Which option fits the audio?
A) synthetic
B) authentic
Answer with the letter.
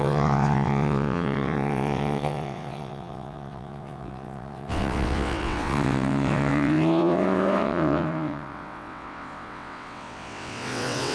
A